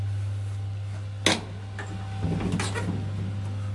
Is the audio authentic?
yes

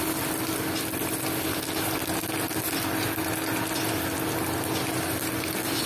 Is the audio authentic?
yes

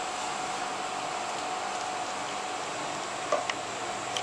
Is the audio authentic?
yes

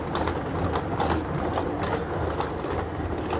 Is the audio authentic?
yes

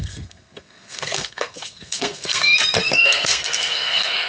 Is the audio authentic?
no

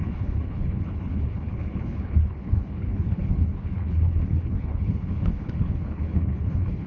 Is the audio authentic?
no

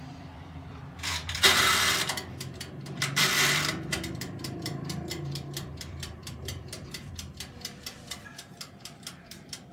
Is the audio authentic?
no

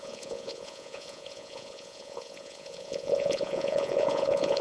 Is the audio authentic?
no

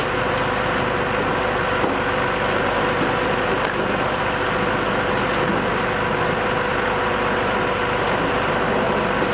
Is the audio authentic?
yes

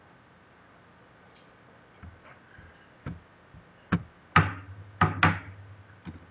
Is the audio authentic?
yes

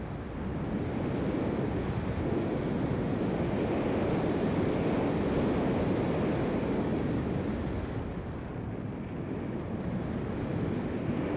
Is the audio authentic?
yes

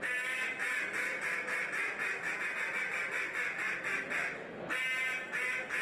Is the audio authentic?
yes